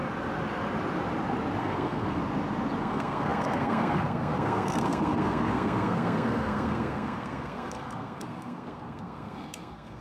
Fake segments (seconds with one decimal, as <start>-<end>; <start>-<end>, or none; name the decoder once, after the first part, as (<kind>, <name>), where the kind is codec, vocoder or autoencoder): 1.6-2.2 (codec, SNAC); 2.8-10.0

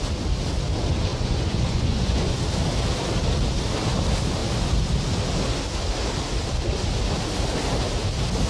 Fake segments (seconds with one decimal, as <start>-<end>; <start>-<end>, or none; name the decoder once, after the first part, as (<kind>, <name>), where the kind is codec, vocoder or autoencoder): 1.1-2.4 (vocoder, Vocos)

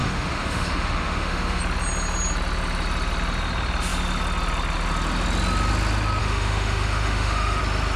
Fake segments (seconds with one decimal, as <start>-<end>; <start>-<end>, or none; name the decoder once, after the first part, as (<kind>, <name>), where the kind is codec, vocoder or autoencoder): 0.0-1.6 (autoencoder, DAC-VAE); 6.2-7.6

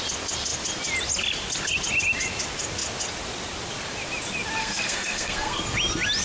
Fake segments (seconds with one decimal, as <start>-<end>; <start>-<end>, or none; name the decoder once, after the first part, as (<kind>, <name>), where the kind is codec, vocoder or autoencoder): 4.6-5.6 (codec, SNAC)

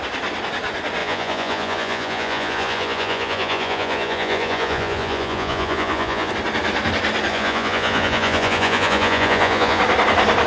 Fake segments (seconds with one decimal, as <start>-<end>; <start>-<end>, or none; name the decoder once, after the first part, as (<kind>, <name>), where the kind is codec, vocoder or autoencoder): 1.0-6.3 (vocoder, Vocos); 7.3-9.8